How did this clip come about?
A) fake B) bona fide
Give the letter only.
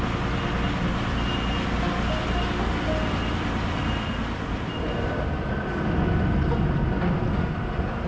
B